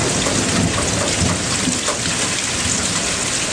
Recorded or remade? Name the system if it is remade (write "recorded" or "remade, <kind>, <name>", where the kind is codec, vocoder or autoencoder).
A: recorded